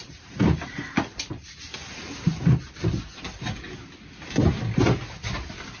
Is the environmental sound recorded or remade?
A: recorded